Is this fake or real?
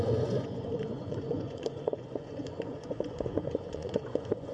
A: fake